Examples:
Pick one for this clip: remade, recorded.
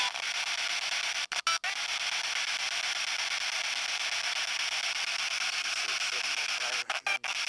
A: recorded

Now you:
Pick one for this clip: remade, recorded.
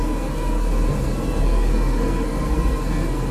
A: remade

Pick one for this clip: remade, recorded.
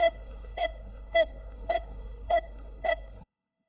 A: remade